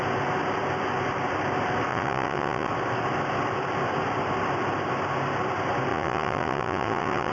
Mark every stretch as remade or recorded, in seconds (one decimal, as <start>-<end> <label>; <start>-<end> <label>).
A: 0.0-1.9 recorded; 1.9-2.7 remade; 2.7-5.9 recorded; 5.9-7.3 remade